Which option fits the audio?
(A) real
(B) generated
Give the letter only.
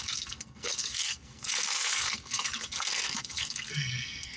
B